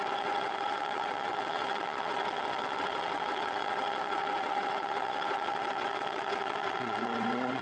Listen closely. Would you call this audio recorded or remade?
remade